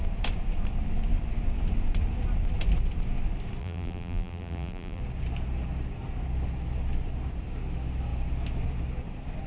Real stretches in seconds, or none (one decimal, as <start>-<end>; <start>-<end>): 0.0-3.6; 5.0-9.5

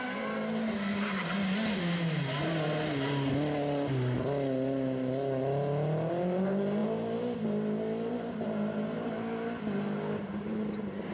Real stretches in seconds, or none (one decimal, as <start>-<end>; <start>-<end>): 0.0-11.1